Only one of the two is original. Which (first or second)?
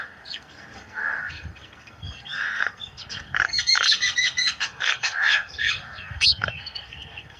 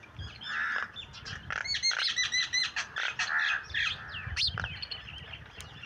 second